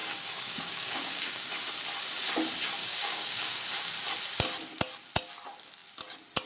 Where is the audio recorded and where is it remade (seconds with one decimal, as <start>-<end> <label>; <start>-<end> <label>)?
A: 0.0-1.5 remade; 1.5-2.8 recorded; 2.8-3.6 remade; 3.6-6.5 recorded